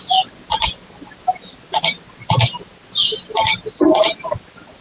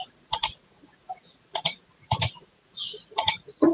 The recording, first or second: first